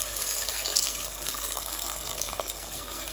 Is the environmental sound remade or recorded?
remade